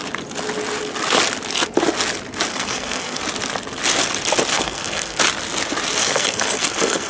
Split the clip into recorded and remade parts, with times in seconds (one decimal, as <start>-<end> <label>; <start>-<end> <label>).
0.0-2.5 recorded; 2.5-3.2 remade; 3.2-4.5 recorded; 4.5-5.2 remade; 5.2-6.0 recorded; 6.0-7.1 remade